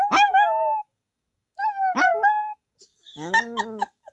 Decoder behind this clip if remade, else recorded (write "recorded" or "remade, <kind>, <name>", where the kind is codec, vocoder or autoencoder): remade, codec, DAC